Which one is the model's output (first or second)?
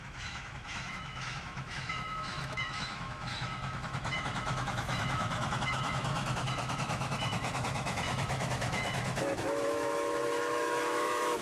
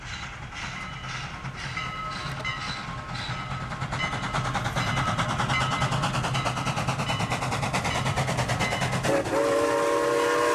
first